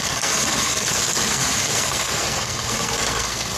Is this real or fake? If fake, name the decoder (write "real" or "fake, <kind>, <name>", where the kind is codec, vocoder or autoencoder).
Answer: fake, codec, SNAC